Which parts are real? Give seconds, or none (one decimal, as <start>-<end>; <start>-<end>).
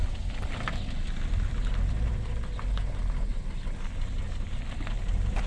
0.0-5.5